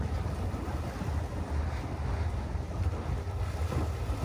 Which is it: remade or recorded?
recorded